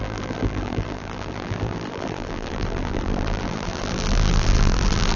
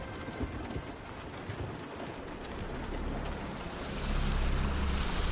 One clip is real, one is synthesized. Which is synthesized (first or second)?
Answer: first